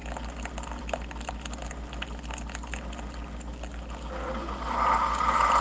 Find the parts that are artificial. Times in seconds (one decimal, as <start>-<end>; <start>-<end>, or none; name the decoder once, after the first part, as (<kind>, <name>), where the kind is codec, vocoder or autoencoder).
none